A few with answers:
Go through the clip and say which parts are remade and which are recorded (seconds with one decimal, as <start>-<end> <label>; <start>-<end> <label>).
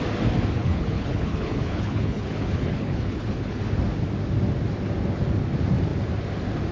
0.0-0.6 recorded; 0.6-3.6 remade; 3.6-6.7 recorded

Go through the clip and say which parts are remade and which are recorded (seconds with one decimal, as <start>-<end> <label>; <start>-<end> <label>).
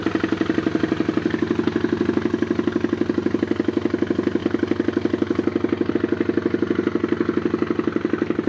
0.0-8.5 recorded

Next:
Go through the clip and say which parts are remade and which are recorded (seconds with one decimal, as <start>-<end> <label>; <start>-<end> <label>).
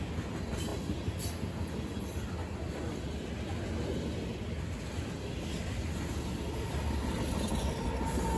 0.0-8.4 recorded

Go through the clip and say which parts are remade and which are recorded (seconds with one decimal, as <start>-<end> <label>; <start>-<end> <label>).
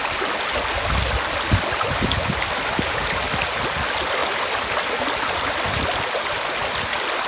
0.0-7.3 recorded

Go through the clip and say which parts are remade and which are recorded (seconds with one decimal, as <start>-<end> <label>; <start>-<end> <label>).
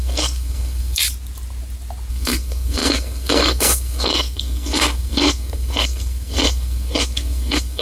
0.0-1.0 remade; 1.0-2.1 recorded; 2.1-7.8 remade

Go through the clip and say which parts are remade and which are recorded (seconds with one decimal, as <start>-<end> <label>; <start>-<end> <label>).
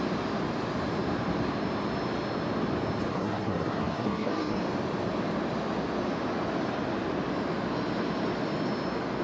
0.0-3.1 recorded; 3.1-4.6 remade; 4.6-9.2 recorded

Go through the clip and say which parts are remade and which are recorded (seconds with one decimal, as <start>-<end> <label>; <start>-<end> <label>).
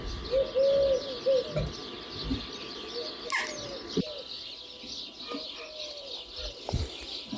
0.0-7.4 recorded